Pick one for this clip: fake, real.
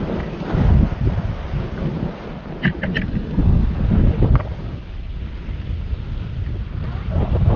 real